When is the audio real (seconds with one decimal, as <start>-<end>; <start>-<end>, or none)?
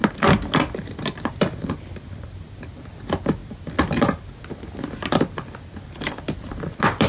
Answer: 0.0-7.1